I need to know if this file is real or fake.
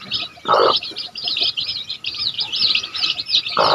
real